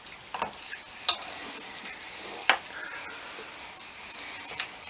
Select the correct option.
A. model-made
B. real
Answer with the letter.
B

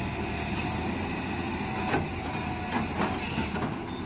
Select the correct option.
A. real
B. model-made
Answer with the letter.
A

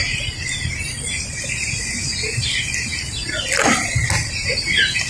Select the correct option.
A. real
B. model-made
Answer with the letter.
A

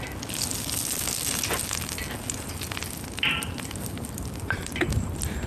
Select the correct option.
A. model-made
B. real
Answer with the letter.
B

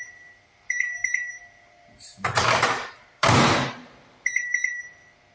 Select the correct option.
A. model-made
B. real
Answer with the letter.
A